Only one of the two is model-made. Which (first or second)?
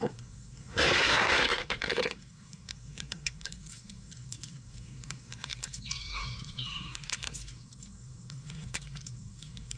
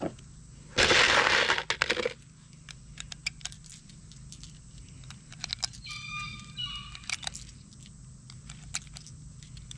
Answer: first